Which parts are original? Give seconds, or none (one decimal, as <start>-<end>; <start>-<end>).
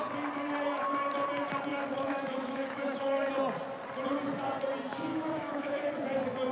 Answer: 0.0-1.7; 3.3-5.1; 5.9-6.5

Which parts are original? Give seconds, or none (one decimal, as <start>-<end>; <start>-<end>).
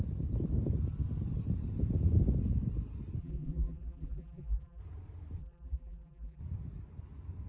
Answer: 0.0-3.2; 4.8-5.4; 6.4-7.5